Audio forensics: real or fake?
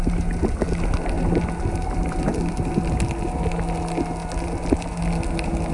real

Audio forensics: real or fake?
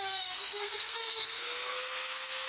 fake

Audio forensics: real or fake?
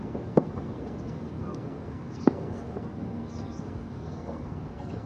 fake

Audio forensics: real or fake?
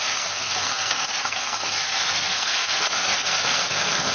fake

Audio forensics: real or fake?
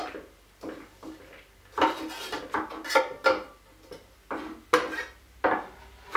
real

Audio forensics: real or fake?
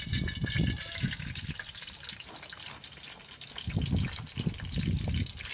real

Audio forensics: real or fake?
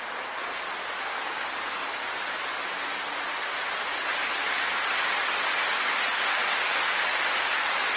real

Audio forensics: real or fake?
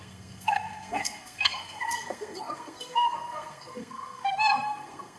fake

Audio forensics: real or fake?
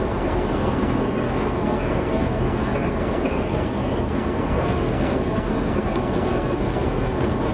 fake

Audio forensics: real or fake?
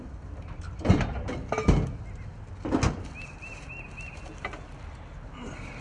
real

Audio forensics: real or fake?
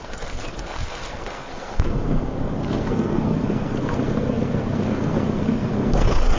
fake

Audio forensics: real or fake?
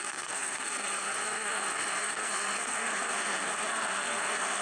fake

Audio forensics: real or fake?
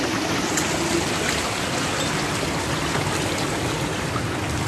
real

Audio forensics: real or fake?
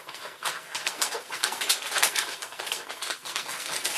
fake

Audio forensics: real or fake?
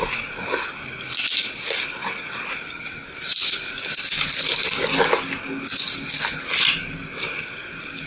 real